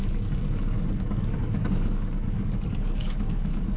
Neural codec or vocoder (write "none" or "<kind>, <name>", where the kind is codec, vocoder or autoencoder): codec, DAC